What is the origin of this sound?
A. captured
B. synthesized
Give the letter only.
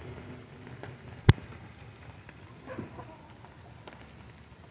A